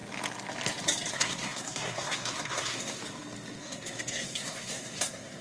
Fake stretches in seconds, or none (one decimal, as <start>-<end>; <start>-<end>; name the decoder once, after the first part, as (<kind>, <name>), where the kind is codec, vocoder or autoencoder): 1.1-3.0 (codec, SNAC); 3.6-5.4